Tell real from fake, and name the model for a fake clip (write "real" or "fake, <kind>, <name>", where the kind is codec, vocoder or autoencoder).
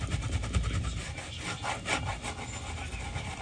real